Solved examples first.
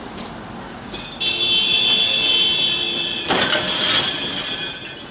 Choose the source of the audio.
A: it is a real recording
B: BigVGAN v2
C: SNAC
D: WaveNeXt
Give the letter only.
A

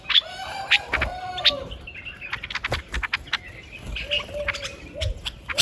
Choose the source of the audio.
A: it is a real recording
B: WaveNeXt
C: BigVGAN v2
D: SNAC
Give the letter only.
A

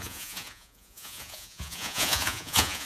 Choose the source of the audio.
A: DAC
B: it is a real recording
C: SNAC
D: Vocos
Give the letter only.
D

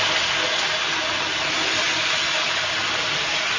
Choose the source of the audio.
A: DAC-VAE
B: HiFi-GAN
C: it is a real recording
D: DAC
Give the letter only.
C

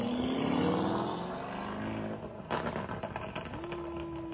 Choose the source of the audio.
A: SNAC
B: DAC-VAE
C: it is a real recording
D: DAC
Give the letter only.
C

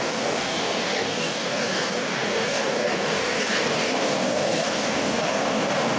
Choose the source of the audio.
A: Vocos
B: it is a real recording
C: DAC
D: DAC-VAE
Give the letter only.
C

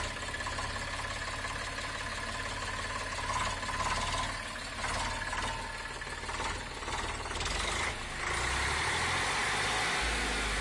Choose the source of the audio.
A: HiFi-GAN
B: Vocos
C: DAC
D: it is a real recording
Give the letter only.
D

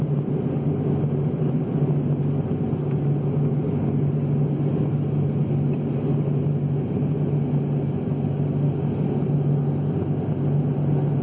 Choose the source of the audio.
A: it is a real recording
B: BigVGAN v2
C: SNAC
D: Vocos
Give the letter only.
A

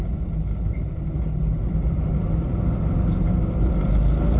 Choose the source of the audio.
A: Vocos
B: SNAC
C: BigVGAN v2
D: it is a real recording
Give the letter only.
D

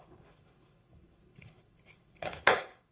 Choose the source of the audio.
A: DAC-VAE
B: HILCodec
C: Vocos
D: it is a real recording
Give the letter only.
B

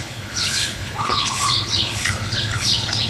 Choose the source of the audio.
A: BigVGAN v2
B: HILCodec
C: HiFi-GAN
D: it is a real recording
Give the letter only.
B